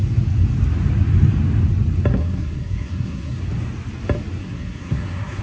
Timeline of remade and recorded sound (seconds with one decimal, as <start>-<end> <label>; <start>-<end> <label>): 0.0-2.1 recorded; 2.1-3.4 remade; 3.4-4.4 recorded; 4.4-5.4 remade